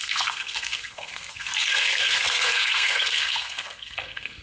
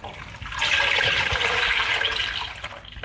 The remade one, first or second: first